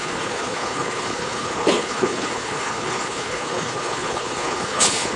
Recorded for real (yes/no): no